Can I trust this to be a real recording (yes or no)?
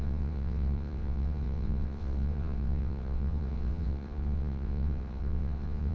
no